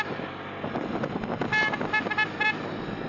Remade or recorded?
recorded